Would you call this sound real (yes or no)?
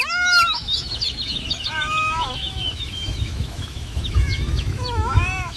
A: no